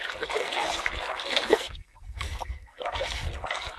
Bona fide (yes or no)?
no